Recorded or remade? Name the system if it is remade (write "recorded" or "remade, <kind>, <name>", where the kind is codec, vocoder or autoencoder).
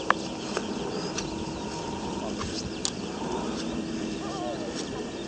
recorded